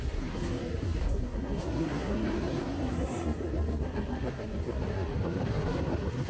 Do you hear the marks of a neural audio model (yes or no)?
yes